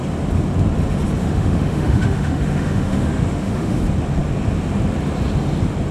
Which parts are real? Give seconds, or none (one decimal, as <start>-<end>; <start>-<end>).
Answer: 0.0-1.2; 3.8-5.9